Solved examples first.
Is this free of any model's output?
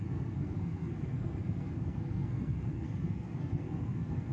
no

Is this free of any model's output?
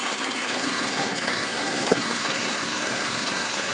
no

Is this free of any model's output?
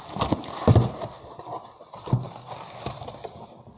yes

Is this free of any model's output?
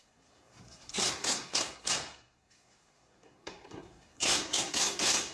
no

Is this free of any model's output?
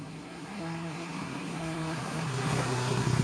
no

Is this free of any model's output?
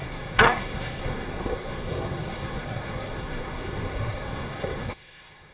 no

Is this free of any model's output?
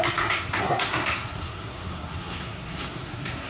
no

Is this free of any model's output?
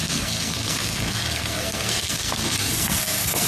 no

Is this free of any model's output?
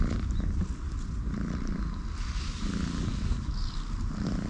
yes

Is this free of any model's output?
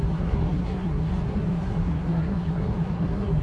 no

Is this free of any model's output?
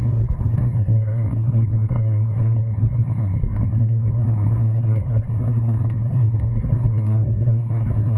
no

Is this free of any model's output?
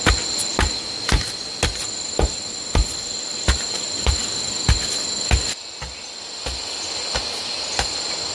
yes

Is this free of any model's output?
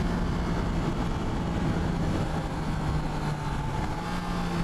yes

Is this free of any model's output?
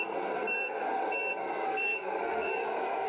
no